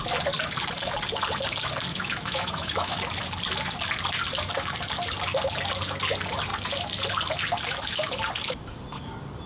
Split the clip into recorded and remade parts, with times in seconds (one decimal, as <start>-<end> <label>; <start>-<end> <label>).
0.0-1.9 recorded; 1.9-3.0 remade; 3.0-9.5 recorded